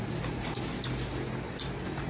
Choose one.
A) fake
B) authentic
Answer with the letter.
B